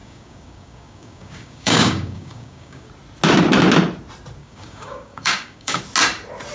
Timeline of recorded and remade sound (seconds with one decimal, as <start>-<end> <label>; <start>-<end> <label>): 0.0-2.9 remade; 2.9-4.4 recorded; 4.4-5.8 remade; 5.8-6.5 recorded

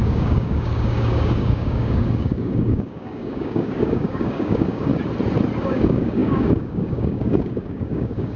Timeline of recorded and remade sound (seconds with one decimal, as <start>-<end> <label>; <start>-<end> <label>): 0.0-4.9 remade; 4.9-5.6 recorded; 5.6-8.4 remade

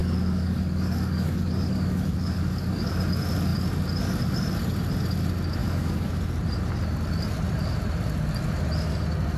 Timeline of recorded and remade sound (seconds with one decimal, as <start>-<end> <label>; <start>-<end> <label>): 0.0-2.9 remade; 2.9-5.6 recorded; 5.6-6.2 remade; 6.2-9.4 recorded

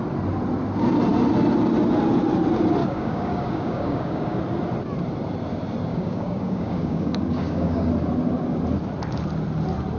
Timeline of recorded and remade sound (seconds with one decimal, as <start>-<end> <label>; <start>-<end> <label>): 0.0-2.8 recorded; 2.8-4.4 remade; 4.4-5.9 recorded; 5.9-7.9 remade; 7.9-10.0 recorded

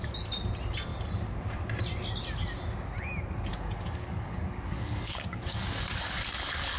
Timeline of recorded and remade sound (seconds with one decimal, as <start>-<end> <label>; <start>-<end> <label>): 0.0-3.5 recorded; 3.5-6.8 remade

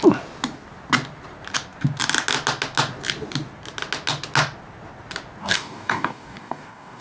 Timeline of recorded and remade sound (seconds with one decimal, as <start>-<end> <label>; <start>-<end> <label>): 0.0-5.4 recorded; 5.4-7.0 remade

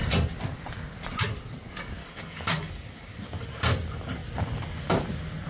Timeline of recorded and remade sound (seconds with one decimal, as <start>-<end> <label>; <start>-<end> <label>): 0.0-2.0 recorded; 2.0-3.2 remade; 3.2-5.5 recorded

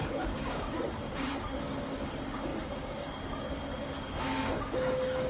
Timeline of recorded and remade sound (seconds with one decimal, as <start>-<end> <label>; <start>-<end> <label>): 0.0-5.3 remade